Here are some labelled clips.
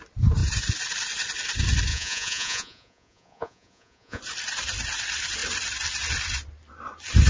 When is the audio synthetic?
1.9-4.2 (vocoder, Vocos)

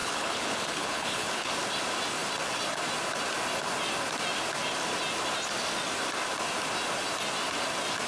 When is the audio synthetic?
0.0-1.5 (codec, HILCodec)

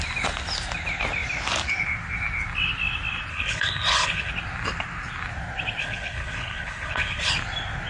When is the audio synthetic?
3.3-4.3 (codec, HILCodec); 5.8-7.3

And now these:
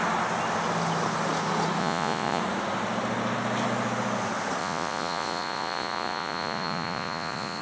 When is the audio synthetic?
1.8-2.4 (vocoder, Vocos); 4.6-7.6

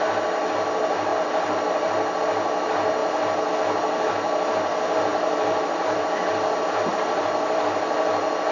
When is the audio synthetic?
5.1-6.2 (vocoder, BigVGAN v2); 6.9-8.1

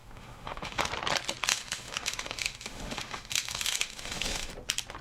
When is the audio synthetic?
0.0-0.8 (autoencoder, DAC-VAE); 1.5-4.5

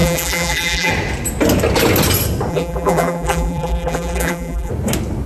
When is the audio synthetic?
0.0-0.9 (vocoder, BigVGAN v2); 2.5-4.7